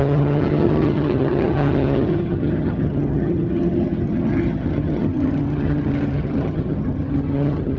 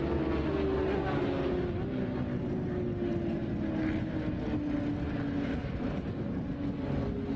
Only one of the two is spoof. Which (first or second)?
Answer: first